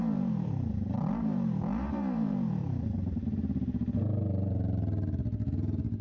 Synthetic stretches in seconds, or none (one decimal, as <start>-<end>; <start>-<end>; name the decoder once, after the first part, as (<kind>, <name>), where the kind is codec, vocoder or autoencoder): 0.0-3.6 (vocoder, BigVGAN v2)